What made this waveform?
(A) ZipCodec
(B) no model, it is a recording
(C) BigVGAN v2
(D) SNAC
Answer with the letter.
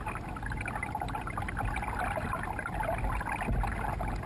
B